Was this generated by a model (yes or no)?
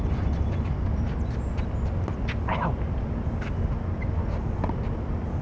no